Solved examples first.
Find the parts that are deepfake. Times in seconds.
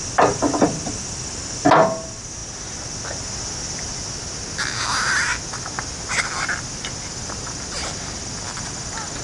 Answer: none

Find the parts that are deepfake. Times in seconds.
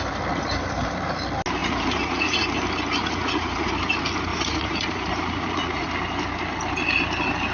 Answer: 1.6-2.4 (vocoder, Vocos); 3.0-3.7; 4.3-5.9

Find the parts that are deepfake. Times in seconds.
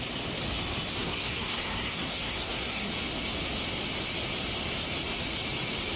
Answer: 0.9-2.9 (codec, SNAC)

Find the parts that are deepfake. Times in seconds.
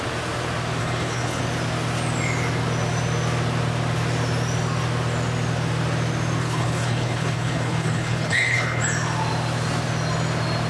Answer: 0.8-1.4 (codec, HILCodec); 6.4-8.8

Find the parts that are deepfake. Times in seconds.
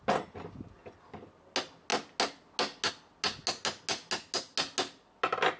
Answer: none